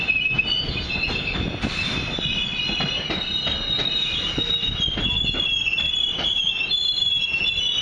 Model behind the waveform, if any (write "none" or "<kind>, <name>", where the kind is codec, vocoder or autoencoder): none